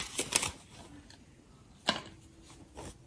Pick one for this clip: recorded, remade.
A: recorded